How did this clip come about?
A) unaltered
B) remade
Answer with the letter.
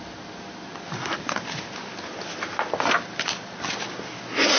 A